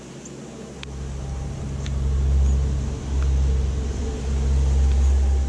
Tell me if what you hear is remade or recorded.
recorded